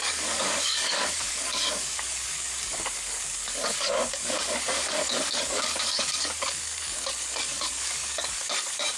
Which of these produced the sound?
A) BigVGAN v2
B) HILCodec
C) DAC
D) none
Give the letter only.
C